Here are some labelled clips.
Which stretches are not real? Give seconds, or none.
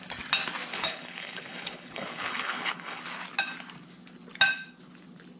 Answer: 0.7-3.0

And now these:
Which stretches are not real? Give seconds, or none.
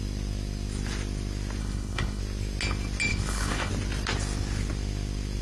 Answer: 1.6-2.2; 3.1-3.7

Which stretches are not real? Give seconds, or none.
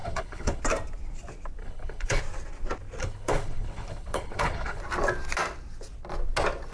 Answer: 0.0-0.6; 1.6-2.2; 3.0-4.8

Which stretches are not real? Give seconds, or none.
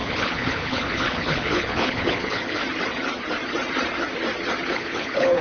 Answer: 0.0-2.6; 4.7-5.4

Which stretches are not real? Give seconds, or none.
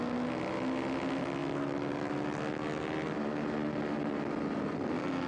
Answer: none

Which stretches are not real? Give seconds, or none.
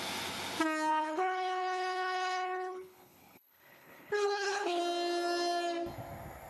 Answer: 0.9-4.8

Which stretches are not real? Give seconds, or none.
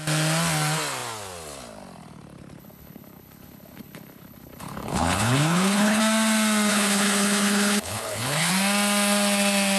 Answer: 2.6-6.0; 6.7-8.5